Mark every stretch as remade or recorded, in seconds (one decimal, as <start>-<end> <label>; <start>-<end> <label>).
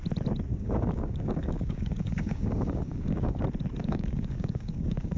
0.0-0.5 recorded; 0.5-3.4 remade; 3.4-3.8 recorded; 3.8-5.2 remade